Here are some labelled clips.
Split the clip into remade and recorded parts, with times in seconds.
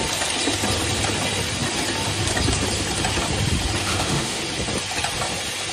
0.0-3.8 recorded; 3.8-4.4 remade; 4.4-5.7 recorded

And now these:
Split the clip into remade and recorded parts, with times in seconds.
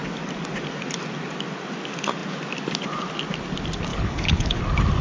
0.0-3.9 recorded; 3.9-4.6 remade; 4.6-5.0 recorded